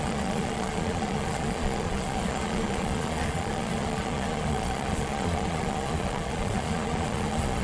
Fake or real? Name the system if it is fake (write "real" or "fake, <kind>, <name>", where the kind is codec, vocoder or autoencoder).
fake, vocoder, Vocos